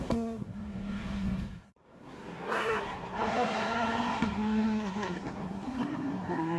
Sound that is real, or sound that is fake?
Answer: fake